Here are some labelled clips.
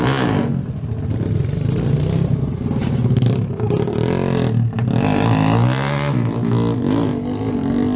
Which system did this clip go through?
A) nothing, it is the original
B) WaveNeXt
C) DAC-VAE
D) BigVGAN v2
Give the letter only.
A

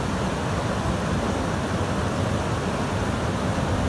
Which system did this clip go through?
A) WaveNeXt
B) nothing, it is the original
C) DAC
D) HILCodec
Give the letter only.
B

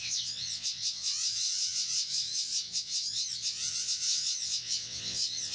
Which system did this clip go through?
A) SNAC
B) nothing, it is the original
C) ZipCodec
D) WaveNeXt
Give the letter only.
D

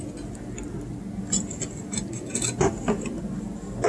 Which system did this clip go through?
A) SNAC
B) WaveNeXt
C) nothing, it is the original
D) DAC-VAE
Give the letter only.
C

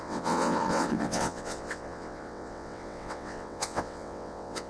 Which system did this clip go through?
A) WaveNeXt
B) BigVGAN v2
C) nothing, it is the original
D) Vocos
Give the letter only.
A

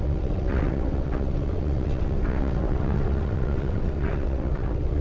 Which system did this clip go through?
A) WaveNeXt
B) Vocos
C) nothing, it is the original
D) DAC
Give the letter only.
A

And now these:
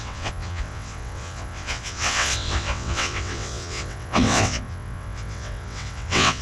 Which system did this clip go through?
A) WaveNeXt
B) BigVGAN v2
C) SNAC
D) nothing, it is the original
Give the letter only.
A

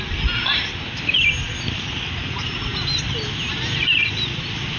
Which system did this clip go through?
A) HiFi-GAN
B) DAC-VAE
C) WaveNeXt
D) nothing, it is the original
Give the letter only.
D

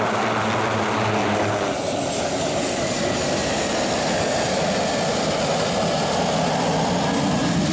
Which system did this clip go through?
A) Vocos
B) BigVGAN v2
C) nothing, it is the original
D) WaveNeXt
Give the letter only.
C